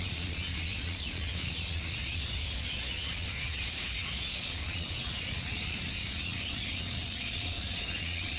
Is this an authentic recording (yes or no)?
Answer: no